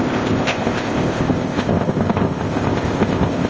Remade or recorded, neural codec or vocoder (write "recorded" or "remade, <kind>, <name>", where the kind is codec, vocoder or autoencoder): remade, codec, ZipCodec